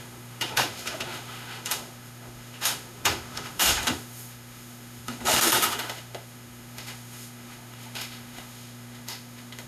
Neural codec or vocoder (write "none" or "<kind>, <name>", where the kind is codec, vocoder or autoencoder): autoencoder, DAC-VAE